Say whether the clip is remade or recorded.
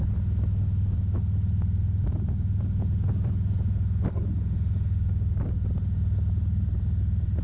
recorded